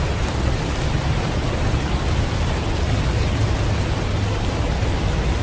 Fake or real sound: real